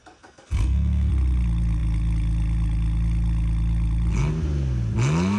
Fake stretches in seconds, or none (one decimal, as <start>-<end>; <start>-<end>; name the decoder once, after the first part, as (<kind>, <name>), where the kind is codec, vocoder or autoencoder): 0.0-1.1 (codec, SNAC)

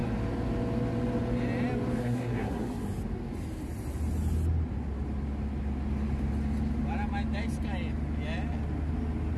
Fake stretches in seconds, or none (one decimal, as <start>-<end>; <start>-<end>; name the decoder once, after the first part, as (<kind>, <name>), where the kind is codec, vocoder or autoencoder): 2.0-2.8 (codec, SNAC)

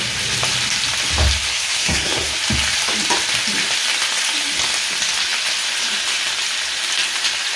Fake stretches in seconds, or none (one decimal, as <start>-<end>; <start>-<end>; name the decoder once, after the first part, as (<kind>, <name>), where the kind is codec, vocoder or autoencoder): 1.5-2.3 (codec, SNAC)